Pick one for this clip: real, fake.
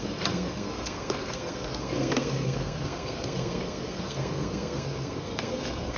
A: fake